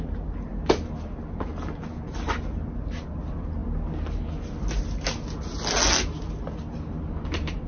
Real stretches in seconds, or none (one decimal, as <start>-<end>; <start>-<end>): 0.0-7.7